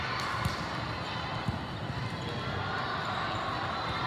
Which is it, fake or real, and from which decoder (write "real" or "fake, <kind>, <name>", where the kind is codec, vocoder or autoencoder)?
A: real